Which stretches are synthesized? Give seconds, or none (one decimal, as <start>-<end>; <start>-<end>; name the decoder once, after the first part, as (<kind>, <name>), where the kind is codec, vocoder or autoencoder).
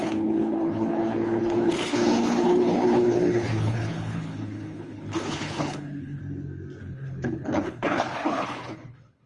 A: 0.0-6.2 (codec, HILCodec); 6.8-9.3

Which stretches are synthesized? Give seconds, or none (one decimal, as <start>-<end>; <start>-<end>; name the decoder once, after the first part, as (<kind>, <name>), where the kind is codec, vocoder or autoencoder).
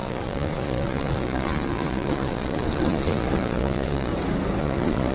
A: 0.0-4.1 (vocoder, Vocos); 4.6-5.1